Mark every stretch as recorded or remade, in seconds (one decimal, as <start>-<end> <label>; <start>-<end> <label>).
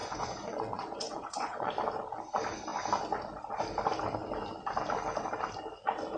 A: 0.0-1.7 remade; 1.7-6.2 recorded